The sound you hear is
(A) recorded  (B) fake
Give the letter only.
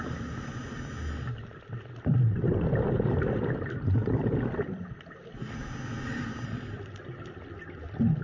A